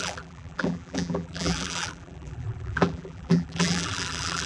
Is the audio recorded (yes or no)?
no